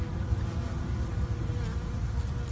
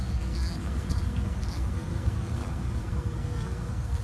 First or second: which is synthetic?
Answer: second